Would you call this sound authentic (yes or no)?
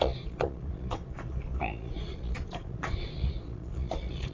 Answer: no